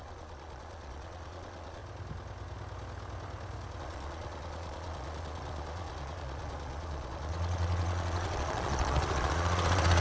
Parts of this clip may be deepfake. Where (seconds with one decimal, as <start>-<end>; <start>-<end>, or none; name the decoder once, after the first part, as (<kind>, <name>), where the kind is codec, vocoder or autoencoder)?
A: 0.0-1.8 (vocoder, Vocos); 3.8-10.0